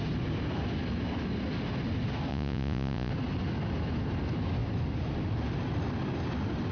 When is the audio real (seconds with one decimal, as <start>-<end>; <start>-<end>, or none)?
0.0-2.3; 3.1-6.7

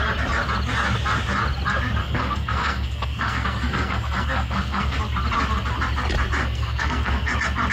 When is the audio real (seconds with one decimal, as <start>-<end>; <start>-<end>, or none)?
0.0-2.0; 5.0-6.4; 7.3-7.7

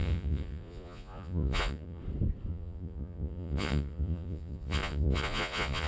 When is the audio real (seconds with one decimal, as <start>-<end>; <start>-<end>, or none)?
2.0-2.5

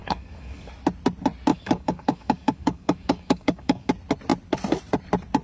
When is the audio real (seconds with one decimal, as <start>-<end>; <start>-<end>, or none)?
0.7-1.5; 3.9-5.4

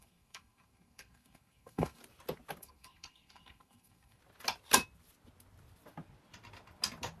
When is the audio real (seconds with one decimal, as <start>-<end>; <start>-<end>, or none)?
2.0-2.6; 4.2-7.2